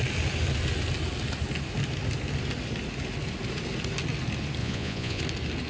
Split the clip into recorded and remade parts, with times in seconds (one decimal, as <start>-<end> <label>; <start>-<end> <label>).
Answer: 0.0-4.6 recorded; 4.6-5.2 remade; 5.2-5.7 recorded